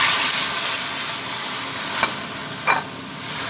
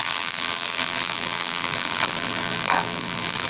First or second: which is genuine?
first